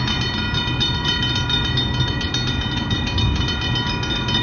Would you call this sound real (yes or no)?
yes